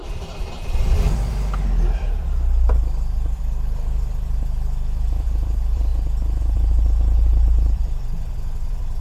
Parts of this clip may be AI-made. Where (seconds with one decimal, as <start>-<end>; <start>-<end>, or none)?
0.0-5.9; 6.4-9.0